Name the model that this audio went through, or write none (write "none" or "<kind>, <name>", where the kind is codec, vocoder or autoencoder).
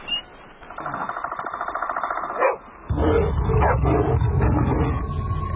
none